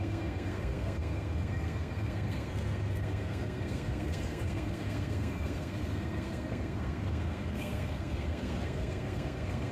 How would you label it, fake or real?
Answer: fake